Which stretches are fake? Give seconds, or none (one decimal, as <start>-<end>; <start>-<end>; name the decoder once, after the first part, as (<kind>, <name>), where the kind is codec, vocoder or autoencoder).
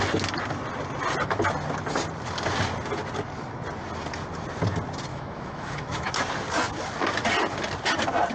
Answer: 5.1-6.1 (autoencoder, DAC-VAE)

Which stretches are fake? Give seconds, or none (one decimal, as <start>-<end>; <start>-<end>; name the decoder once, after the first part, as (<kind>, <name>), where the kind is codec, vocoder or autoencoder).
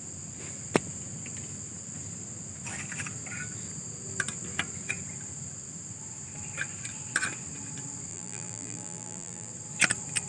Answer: 8.1-9.5 (vocoder, BigVGAN v2)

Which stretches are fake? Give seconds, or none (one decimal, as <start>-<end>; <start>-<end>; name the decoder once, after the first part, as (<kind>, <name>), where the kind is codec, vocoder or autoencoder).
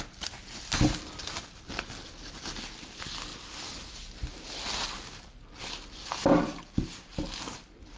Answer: none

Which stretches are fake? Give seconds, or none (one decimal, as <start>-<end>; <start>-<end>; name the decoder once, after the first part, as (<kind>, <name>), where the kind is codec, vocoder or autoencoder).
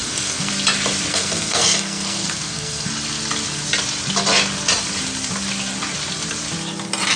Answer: 0.0-0.5 (codec, SNAC); 1.1-2.9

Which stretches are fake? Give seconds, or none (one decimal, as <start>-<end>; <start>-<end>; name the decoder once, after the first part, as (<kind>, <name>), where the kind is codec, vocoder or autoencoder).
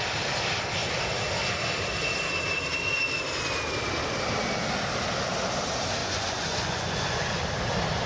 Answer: 6.0-7.4 (vocoder, Vocos)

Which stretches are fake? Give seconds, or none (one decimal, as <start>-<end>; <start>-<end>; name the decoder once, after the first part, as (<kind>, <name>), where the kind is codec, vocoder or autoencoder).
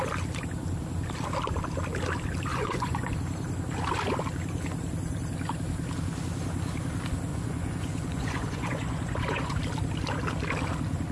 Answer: 2.5-3.1 (vocoder, Vocos); 7.3-9.6